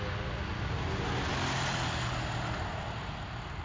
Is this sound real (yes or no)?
yes